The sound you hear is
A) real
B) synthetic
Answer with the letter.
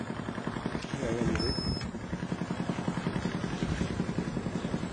A